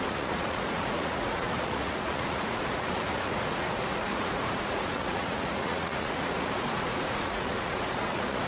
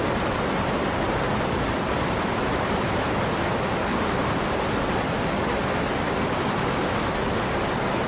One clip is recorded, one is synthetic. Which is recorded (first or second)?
second